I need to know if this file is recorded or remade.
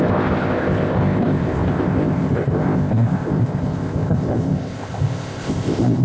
remade